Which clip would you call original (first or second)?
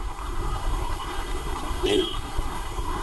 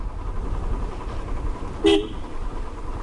second